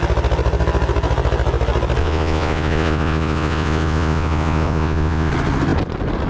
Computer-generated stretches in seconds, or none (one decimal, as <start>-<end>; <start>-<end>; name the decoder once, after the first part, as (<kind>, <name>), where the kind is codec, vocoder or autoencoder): 2.0-5.3 (vocoder, Vocos)